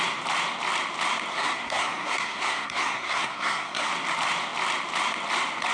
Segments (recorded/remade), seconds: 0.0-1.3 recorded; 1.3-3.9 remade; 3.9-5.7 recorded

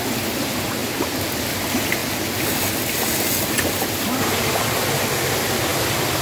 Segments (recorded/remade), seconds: 0.0-6.2 recorded

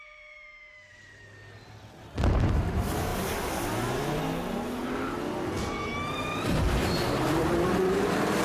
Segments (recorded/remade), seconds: 0.0-6.8 recorded; 6.8-8.4 remade

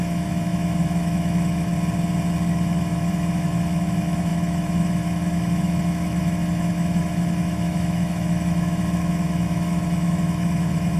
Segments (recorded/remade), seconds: 0.0-1.7 remade; 1.7-2.5 recorded; 2.5-11.0 remade

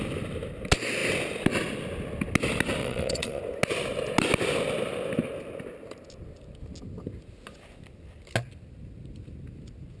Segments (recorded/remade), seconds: 0.0-2.8 recorded; 2.8-3.4 remade; 3.4-10.0 recorded

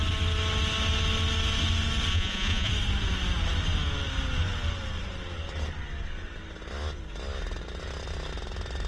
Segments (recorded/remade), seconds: 0.0-2.1 recorded; 2.1-2.7 remade; 2.7-8.9 recorded

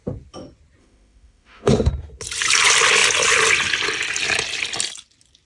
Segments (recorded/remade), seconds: 0.0-0.8 recorded; 0.8-1.9 remade; 1.9-5.4 recorded